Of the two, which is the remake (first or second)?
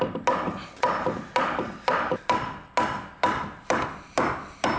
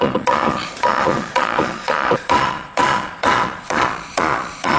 second